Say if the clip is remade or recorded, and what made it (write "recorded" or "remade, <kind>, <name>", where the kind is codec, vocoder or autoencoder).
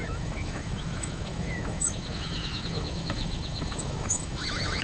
remade, autoencoder, DAC-VAE